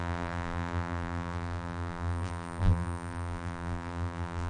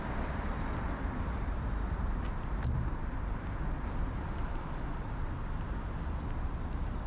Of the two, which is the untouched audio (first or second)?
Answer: second